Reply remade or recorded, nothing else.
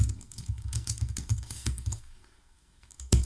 remade